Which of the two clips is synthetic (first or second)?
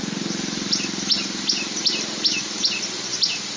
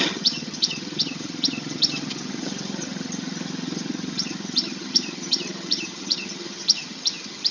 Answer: second